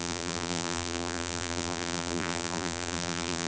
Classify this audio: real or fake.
fake